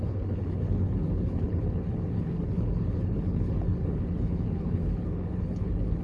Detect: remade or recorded remade